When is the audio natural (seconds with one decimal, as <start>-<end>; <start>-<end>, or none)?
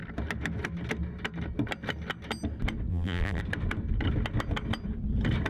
0.0-2.9; 3.4-5.5